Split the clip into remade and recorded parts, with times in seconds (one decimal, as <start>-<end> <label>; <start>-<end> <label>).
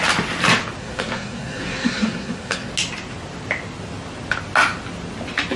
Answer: 0.0-0.8 recorded; 0.8-2.7 remade; 2.7-5.6 recorded